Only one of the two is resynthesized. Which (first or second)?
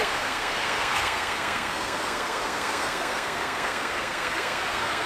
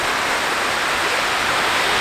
first